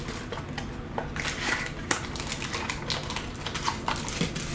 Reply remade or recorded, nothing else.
recorded